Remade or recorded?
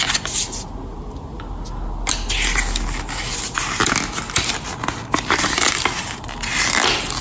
recorded